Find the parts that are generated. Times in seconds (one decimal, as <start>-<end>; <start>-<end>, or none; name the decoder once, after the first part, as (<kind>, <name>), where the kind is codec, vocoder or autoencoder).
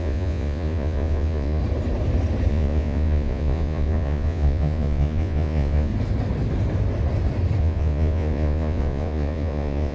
0.0-1.6 (vocoder, Vocos); 2.5-5.9; 7.6-9.9